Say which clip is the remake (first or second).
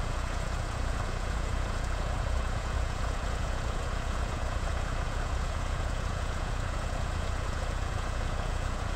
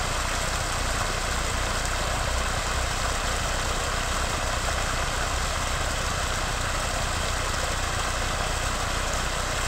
first